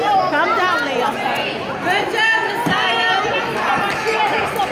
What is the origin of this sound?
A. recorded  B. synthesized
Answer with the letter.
A